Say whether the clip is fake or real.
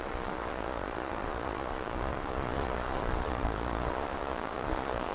fake